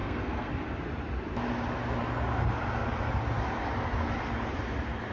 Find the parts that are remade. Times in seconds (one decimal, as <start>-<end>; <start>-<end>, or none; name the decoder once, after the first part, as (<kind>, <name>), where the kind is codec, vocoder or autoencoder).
0.0-0.5 (codec, SNAC)